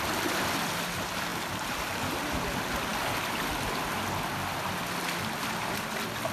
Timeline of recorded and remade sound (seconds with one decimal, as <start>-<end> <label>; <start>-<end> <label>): 0.0-6.3 recorded